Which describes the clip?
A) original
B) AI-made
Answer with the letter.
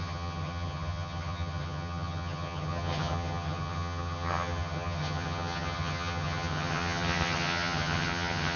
B